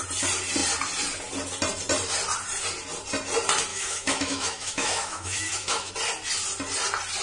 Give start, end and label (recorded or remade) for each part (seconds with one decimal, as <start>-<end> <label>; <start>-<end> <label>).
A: 0.0-3.7 recorded; 3.7-5.9 remade; 5.9-7.2 recorded

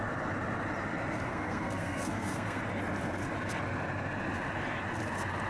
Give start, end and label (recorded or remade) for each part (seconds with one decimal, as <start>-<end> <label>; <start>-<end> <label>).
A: 0.0-1.3 recorded; 1.3-2.6 remade; 2.6-5.5 recorded

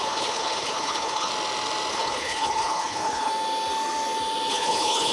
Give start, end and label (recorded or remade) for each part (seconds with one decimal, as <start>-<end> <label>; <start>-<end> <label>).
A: 0.0-1.3 remade; 1.3-1.9 recorded; 1.9-3.3 remade; 3.3-4.5 recorded; 4.5-5.1 remade

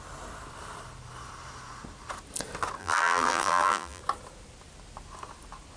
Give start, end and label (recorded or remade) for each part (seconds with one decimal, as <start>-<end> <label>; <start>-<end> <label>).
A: 0.0-2.8 recorded; 2.8-4.0 remade; 4.0-5.8 recorded